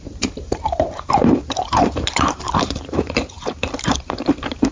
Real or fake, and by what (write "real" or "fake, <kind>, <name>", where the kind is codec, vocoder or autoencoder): fake, vocoder, BigVGAN v2